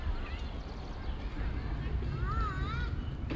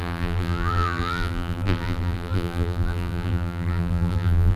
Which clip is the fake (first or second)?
second